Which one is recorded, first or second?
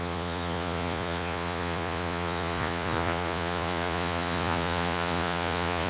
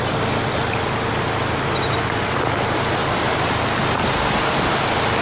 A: second